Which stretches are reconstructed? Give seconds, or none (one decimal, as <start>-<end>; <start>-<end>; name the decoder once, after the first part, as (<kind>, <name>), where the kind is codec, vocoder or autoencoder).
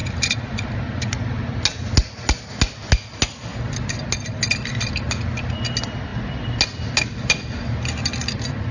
none